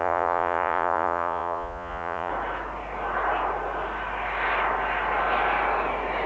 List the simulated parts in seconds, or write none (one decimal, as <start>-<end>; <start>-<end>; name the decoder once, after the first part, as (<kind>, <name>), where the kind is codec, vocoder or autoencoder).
0.0-2.3 (vocoder, Vocos)